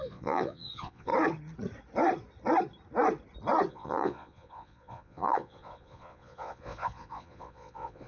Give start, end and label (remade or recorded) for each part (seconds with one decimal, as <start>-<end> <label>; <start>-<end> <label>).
0.0-1.1 remade; 1.1-3.7 recorded; 3.7-8.1 remade